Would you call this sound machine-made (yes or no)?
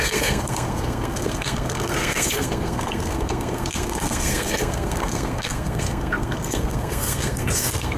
yes